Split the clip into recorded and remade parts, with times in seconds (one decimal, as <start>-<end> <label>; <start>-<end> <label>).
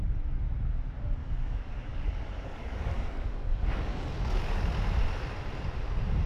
0.0-1.2 recorded; 1.2-4.7 remade; 4.7-6.3 recorded